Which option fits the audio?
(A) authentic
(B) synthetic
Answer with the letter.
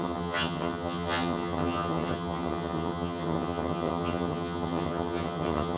B